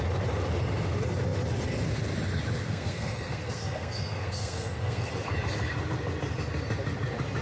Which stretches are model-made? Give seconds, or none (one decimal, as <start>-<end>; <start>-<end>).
2.6-5.1